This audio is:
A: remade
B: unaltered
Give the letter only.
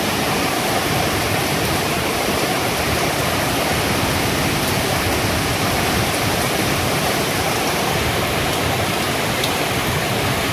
B